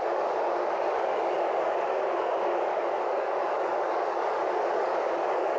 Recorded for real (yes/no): no